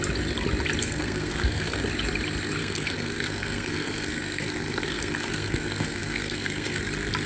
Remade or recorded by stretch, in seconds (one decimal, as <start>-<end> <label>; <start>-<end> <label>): 0.0-0.8 recorded; 0.8-1.9 remade; 1.9-2.6 recorded; 2.6-6.8 remade; 6.8-7.3 recorded